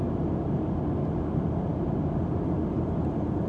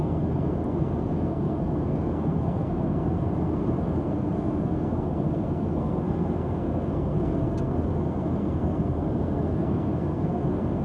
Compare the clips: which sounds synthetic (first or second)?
second